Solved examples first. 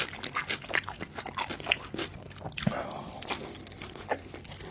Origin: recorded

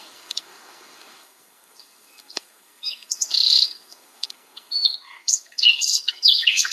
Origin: remade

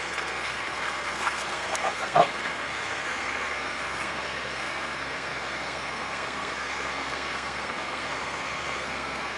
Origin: remade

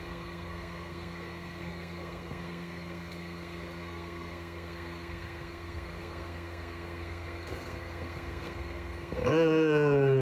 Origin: remade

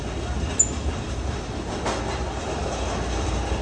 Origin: recorded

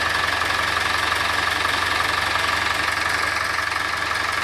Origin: recorded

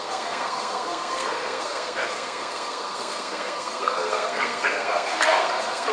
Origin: remade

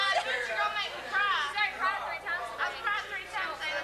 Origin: recorded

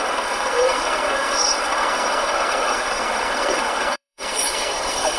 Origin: remade